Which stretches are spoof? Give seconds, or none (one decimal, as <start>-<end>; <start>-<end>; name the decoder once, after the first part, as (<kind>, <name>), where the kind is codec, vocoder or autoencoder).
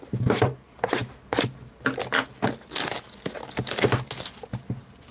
none